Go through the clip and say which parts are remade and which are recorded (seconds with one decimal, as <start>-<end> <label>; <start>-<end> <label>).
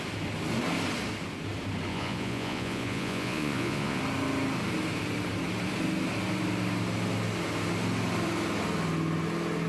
0.0-1.9 recorded; 1.9-4.0 remade; 4.0-9.7 recorded